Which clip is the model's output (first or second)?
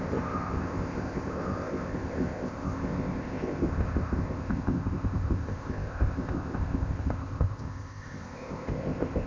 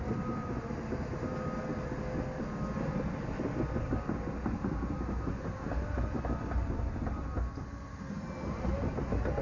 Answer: first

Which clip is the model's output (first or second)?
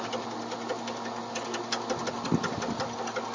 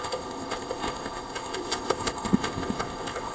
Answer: second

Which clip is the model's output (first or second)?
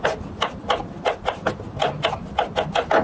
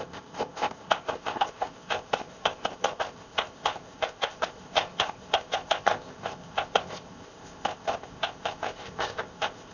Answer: second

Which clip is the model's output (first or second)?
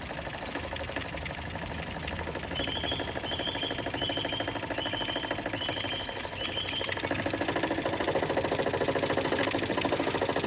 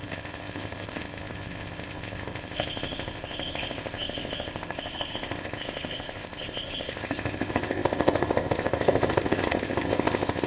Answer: second